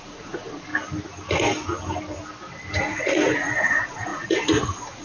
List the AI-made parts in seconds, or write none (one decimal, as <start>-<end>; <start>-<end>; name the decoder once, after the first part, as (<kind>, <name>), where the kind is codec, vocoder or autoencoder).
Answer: 0.0-0.7 (vocoder, Vocos); 2.7-5.0